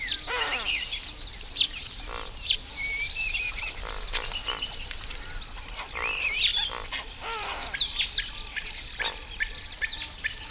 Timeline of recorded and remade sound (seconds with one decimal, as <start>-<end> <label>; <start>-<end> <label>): 0.0-6.5 remade; 6.5-7.1 recorded; 7.1-10.5 remade

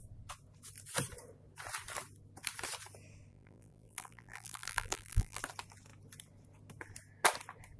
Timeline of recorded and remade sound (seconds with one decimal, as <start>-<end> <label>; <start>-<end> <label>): 0.0-3.3 recorded; 3.3-5.4 remade; 5.4-7.8 recorded

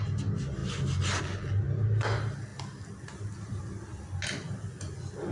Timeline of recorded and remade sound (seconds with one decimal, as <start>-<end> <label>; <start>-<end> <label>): 0.0-5.3 recorded

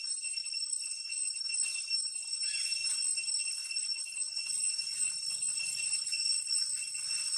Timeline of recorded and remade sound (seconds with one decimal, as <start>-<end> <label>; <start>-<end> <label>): 0.0-0.4 recorded; 0.4-1.4 remade; 1.4-3.6 recorded; 3.6-5.1 remade; 5.1-5.5 recorded; 5.5-6.2 remade; 6.2-7.4 recorded

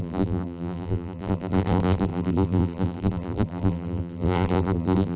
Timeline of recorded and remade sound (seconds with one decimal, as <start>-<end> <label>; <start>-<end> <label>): 0.0-5.2 remade